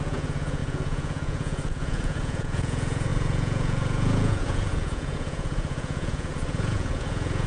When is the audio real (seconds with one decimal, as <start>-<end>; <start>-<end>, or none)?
none